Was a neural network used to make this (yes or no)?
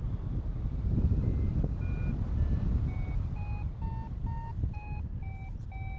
no